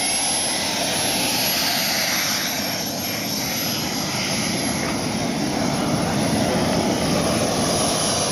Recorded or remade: recorded